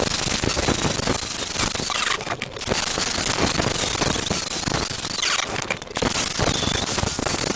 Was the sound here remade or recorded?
recorded